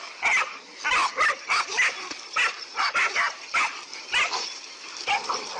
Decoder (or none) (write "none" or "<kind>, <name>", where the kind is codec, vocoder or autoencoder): none